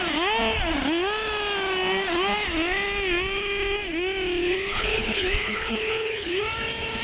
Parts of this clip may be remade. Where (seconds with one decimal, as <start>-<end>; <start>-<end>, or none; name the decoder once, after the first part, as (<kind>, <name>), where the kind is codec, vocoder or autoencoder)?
4.4-6.4 (codec, HILCodec)